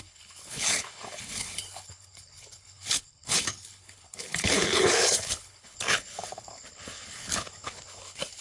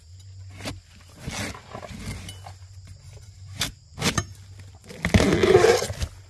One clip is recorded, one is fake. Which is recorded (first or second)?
second